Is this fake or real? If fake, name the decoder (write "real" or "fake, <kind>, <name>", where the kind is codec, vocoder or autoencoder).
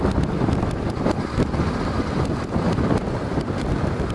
real